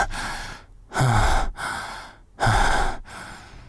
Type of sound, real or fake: real